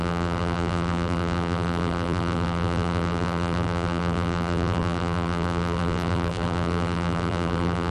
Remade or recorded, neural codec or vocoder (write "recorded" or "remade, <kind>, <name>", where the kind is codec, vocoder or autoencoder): remade, vocoder, BigVGAN v2